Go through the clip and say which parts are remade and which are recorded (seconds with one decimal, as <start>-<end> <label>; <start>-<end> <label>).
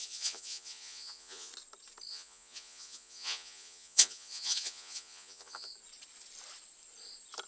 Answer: 0.0-1.5 remade; 1.5-2.1 recorded; 2.1-5.7 remade; 5.7-7.5 recorded